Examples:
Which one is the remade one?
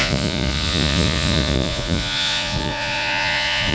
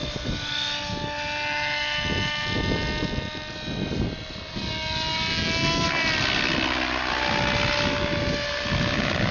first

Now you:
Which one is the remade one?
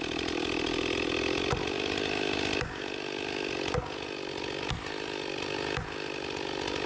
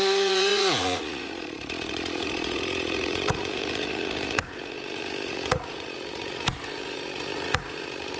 second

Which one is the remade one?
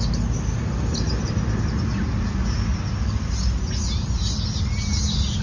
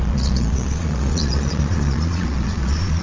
second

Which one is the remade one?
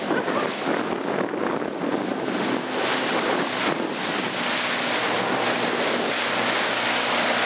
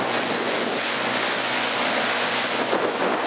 second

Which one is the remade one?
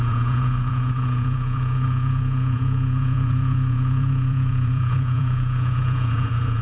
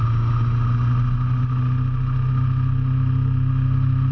first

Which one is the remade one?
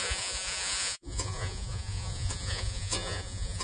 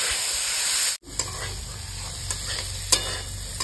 first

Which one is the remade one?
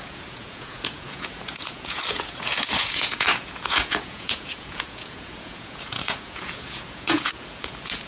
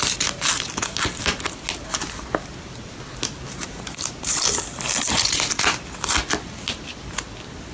first